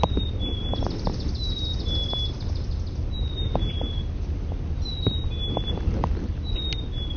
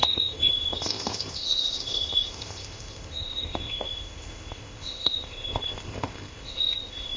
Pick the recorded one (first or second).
first